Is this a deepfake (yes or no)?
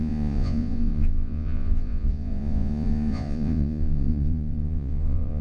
yes